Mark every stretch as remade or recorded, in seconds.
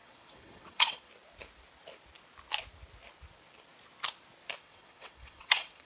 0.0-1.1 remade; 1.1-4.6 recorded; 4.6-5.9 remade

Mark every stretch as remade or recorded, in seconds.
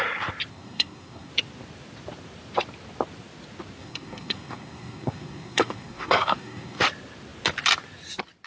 0.0-0.5 recorded; 0.5-1.3 remade; 1.3-3.8 recorded; 3.8-6.8 remade; 6.8-8.5 recorded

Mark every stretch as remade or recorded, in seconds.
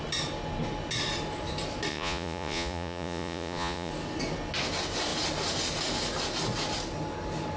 0.0-1.9 recorded; 1.9-3.9 remade; 3.9-7.6 recorded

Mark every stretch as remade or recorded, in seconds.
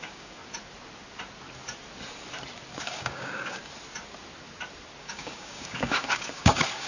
0.0-0.4 remade; 0.4-2.8 recorded; 2.8-3.6 remade; 3.6-5.0 recorded; 5.0-6.9 remade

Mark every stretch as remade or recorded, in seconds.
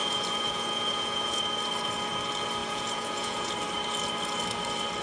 0.0-1.4 remade; 1.4-2.6 recorded; 2.6-3.5 remade; 3.5-5.0 recorded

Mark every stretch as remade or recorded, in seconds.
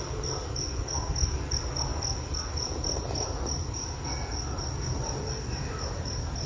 0.0-6.5 recorded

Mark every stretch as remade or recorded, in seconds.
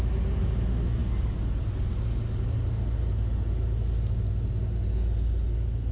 0.0-5.9 recorded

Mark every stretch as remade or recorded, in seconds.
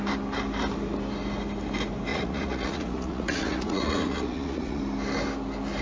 0.0-2.1 recorded; 2.1-4.8 remade; 4.8-5.8 recorded